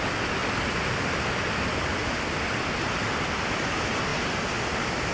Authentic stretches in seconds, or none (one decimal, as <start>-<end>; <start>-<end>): 0.0-5.1

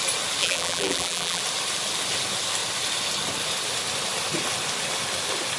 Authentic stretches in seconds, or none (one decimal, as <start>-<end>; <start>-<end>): 0.0-0.4; 1.4-5.6

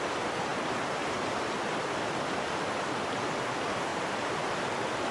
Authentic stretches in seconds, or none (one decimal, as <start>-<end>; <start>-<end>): 0.0-0.5; 1.2-3.9; 4.6-5.1

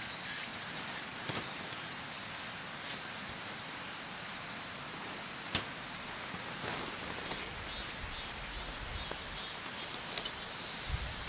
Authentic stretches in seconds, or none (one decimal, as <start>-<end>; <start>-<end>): 0.0-0.5; 1.8-11.3

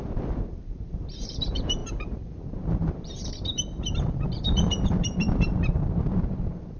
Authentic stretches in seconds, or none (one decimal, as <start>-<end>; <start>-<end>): none

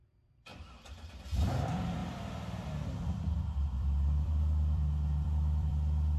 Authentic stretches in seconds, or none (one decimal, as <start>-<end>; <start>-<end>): none

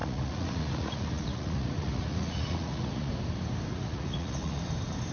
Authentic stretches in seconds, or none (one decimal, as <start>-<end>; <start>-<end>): 3.1-3.7; 4.6-5.1